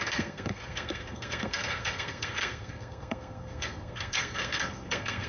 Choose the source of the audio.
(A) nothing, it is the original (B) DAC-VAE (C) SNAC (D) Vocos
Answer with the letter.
C